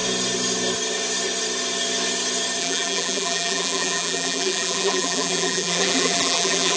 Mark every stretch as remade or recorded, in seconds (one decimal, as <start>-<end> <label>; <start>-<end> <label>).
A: 0.0-2.6 recorded; 2.6-6.8 remade